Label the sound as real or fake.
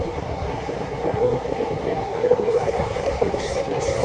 fake